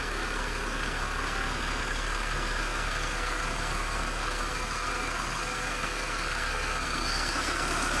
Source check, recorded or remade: remade